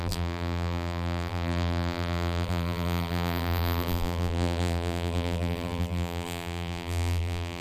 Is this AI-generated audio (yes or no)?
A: yes